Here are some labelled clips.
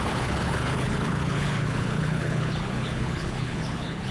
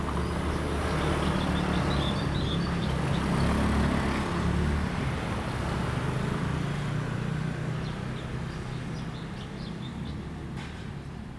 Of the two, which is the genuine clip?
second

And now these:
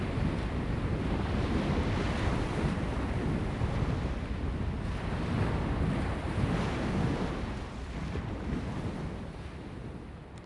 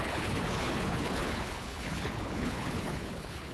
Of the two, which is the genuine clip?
first